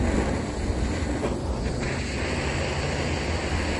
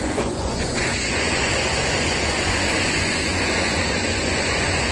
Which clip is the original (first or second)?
first